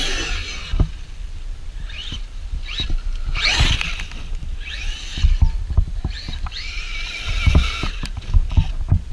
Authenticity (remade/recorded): recorded